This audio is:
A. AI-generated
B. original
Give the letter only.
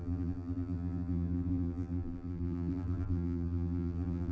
A